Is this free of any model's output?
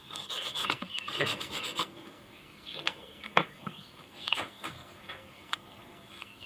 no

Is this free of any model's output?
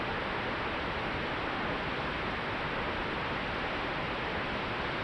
yes